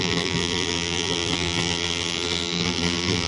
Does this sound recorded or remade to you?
remade